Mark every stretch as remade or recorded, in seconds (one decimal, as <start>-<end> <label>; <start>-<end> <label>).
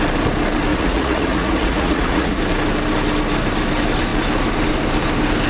0.0-0.7 recorded; 0.7-2.4 remade; 2.4-5.5 recorded